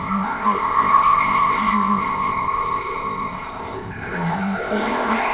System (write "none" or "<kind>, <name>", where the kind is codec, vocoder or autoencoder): codec, ZipCodec